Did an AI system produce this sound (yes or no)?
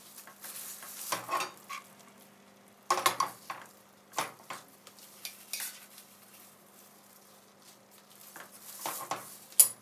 no